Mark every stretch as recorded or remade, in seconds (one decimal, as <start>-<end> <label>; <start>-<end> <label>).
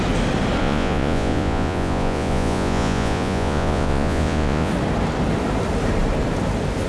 0.0-0.6 recorded; 0.6-4.7 remade; 4.7-6.9 recorded